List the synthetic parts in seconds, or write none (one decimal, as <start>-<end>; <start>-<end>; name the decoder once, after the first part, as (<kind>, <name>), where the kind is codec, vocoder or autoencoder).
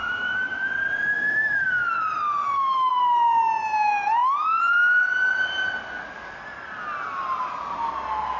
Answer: 0.0-0.7 (autoencoder, DAC-VAE); 1.1-1.9; 2.4-2.9